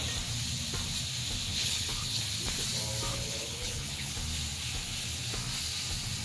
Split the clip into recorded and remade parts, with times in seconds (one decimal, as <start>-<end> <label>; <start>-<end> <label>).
0.0-1.5 recorded; 1.5-2.2 remade; 2.2-3.1 recorded; 3.1-4.1 remade; 4.1-6.2 recorded